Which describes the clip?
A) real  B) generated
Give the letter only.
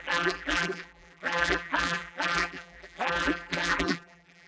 B